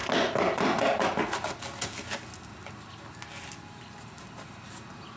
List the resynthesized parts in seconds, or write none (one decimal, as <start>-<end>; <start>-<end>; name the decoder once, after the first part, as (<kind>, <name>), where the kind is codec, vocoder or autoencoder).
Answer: none